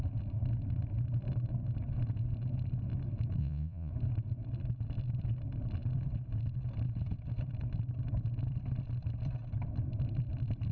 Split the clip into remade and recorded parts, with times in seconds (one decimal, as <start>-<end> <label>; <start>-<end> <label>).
0.0-3.4 recorded; 3.4-3.9 remade; 3.9-10.7 recorded